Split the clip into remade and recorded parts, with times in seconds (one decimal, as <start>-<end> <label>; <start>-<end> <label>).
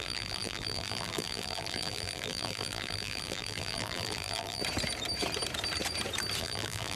0.0-4.6 remade; 4.6-6.4 recorded; 6.4-7.0 remade